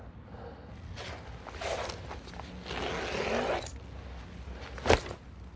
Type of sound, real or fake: real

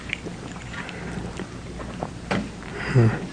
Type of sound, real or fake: real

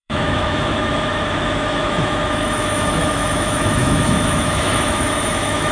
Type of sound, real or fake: fake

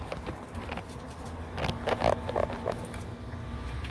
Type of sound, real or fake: real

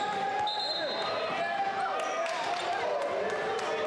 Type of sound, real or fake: real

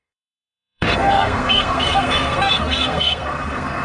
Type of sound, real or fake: fake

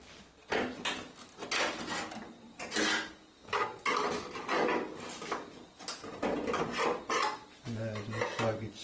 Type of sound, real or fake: real